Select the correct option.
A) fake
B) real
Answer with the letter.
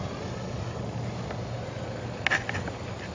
B